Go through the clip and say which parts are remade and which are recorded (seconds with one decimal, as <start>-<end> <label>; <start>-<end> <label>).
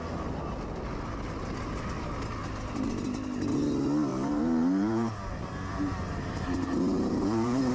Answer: 0.0-4.1 recorded; 4.1-7.7 remade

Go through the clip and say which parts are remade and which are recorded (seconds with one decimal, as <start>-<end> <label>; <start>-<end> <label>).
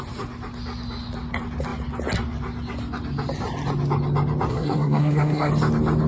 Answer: 0.0-4.5 recorded; 4.5-5.5 remade; 5.5-6.1 recorded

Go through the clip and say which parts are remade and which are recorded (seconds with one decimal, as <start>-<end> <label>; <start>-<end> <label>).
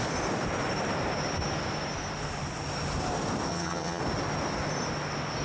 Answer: 0.0-3.5 recorded; 3.5-4.0 remade; 4.0-5.4 recorded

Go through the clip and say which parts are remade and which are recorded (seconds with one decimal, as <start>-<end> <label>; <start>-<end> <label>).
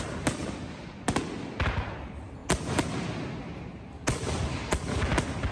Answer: 0.0-5.5 recorded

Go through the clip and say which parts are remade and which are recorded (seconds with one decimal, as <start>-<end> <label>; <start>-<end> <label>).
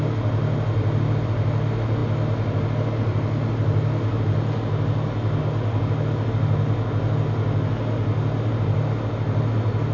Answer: 0.0-9.9 recorded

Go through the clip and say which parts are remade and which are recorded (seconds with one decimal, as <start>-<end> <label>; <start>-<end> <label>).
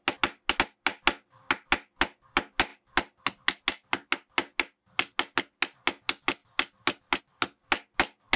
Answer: 0.0-8.4 recorded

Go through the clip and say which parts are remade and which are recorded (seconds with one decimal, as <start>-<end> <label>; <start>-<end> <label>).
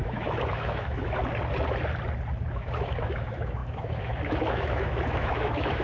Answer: 0.0-1.2 remade; 1.2-2.5 recorded; 2.5-5.8 remade